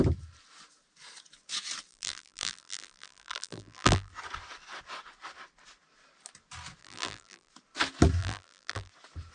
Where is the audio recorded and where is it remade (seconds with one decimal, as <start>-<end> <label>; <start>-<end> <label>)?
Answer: 0.0-1.9 recorded; 1.9-4.1 remade; 4.1-6.8 recorded; 6.8-7.5 remade; 7.5-8.2 recorded; 8.2-8.9 remade; 8.9-9.3 recorded